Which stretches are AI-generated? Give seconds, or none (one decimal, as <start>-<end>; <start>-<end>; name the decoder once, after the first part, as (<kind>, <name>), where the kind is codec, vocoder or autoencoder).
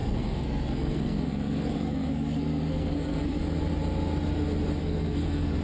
0.0-3.4 (codec, SNAC); 4.8-5.6